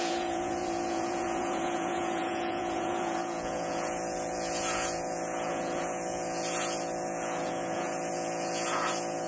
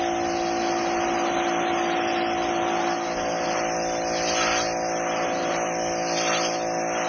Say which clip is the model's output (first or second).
first